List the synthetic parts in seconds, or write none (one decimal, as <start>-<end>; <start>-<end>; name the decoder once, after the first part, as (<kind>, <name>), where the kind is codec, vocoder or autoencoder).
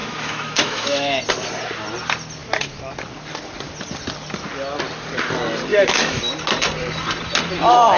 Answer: 0.0-1.2 (autoencoder, DAC-VAE); 5.7-6.2